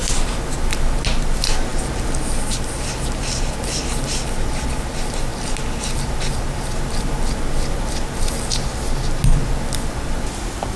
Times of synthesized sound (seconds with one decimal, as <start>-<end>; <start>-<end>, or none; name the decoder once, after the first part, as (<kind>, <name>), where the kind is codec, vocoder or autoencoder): none